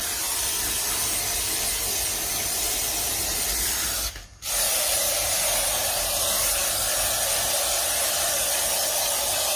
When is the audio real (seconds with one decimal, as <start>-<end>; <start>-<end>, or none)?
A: 0.0-9.6